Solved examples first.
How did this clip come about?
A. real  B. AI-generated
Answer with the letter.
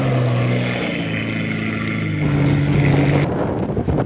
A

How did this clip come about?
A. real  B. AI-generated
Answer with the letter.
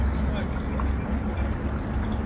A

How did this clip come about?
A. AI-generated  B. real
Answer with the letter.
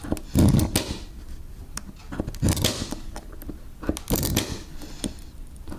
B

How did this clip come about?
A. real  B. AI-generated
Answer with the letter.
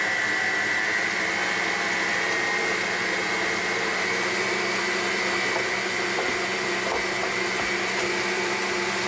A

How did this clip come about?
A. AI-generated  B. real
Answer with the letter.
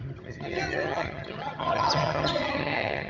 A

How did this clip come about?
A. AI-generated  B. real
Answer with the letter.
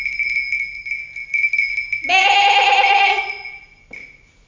B